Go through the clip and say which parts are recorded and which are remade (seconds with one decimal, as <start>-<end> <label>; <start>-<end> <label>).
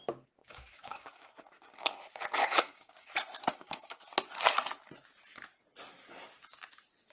0.0-0.4 recorded; 0.4-1.3 remade; 1.3-2.4 recorded; 2.4-3.1 remade; 3.1-3.5 recorded; 3.5-4.0 remade; 4.0-7.1 recorded